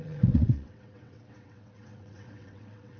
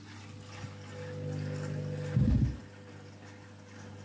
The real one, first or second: second